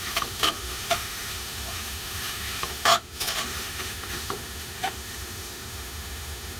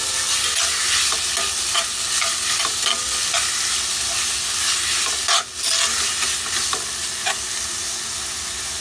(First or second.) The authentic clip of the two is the second